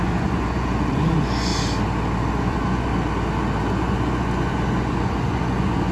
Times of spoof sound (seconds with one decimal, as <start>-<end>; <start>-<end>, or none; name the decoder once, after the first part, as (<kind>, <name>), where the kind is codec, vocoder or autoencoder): 0.0-1.5 (vocoder, Vocos); 2.3-2.9; 3.7-5.9